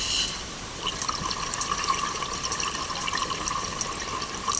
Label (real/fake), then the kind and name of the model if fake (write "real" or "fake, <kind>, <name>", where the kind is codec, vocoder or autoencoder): real